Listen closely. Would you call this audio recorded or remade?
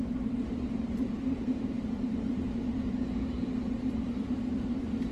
remade